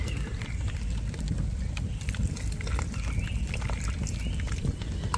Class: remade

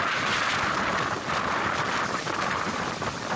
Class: recorded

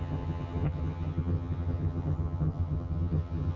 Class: remade